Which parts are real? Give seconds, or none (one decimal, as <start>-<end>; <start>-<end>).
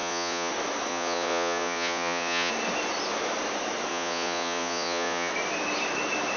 0.5-0.9; 2.5-3.9; 5.3-6.4